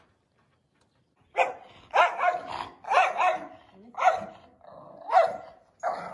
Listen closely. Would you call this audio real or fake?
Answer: real